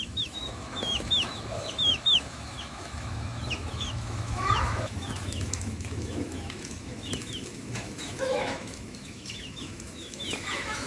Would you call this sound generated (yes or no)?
yes